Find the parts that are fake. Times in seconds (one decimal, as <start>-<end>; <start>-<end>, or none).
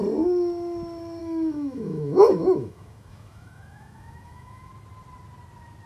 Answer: 1.2-4.7